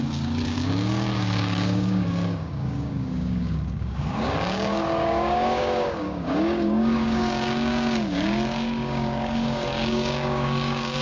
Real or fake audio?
fake